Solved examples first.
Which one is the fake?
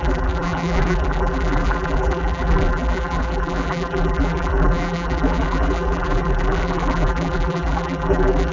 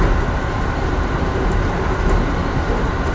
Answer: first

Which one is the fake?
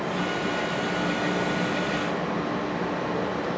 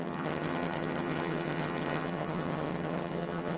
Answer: second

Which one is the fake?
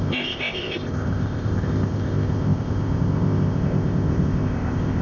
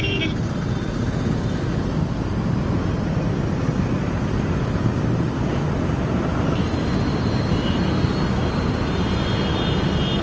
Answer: first